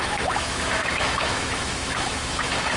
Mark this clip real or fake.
fake